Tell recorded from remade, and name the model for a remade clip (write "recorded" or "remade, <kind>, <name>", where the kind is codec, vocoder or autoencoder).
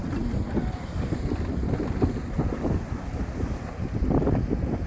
recorded